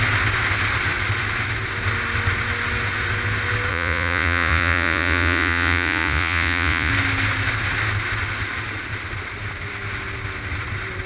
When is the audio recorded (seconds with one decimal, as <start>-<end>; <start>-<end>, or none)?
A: 0.0-3.7; 6.9-11.1